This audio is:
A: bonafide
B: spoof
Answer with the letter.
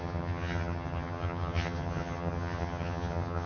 B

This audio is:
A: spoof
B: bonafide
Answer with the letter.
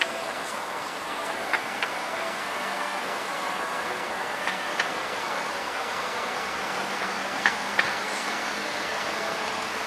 A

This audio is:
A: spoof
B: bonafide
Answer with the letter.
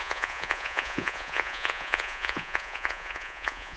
A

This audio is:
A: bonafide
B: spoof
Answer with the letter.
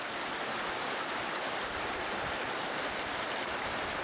A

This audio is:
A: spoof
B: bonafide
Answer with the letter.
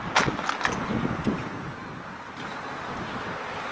B